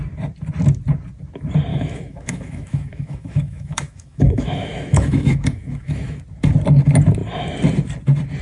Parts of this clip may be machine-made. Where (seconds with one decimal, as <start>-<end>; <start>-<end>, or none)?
1.7-6.2